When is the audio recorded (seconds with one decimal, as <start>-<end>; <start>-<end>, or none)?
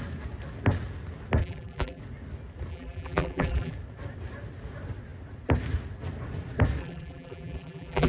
0.0-1.4; 2.0-2.7; 3.7-6.8